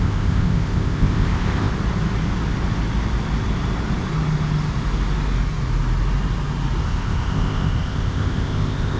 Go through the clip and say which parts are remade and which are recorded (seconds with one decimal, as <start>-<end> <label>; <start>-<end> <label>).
0.0-1.7 remade; 1.7-6.8 recorded; 6.8-9.0 remade